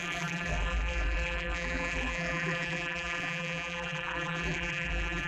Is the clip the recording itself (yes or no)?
no